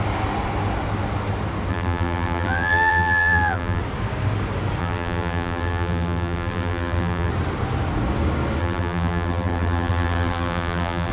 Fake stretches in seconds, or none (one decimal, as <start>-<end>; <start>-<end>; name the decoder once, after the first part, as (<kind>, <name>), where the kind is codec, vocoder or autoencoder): 1.7-3.8 (vocoder, BigVGAN v2); 4.8-7.3; 8.6-11.1